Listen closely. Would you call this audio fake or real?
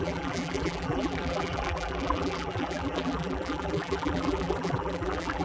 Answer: fake